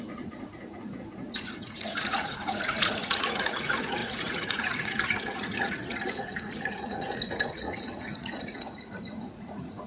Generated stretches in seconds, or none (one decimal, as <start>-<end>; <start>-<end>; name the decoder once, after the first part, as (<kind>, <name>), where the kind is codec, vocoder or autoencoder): 0.0-9.9 (vocoder, Vocos)